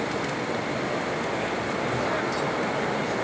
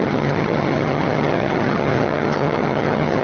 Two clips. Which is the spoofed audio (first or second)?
second